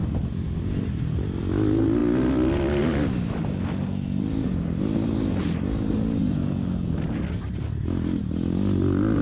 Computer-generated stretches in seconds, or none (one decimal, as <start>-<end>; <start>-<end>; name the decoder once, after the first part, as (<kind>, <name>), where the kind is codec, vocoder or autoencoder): 0.0-1.4 (vocoder, BigVGAN v2)